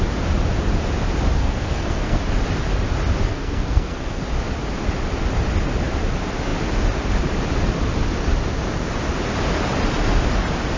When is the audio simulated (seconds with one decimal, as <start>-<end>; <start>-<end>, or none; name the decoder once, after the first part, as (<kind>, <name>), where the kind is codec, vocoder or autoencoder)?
1.4-2.2 (codec, SNAC); 3.3-4.2